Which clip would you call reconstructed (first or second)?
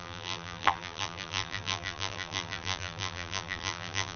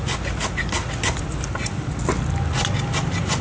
first